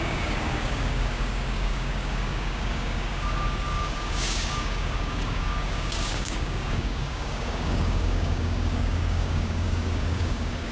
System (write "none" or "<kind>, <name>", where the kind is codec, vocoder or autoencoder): codec, DAC